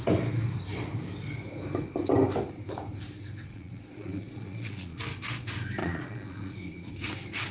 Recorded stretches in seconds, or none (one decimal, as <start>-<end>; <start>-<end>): 0.0-3.5; 5.0-5.8; 6.9-7.5